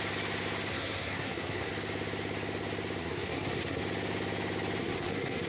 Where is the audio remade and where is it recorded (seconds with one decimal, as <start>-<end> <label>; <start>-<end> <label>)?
0.0-0.7 recorded; 0.7-1.7 remade; 1.7-3.0 recorded; 3.0-3.8 remade; 3.8-4.8 recorded; 4.8-5.5 remade